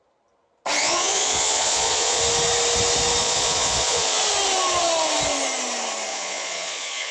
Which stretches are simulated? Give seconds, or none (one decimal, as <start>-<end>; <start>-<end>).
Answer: 0.8-2.2; 3.2-4.2; 6.1-7.1